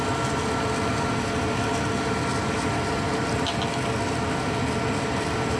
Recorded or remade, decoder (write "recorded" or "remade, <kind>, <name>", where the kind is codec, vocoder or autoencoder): recorded